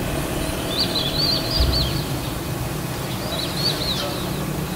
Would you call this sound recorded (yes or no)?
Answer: yes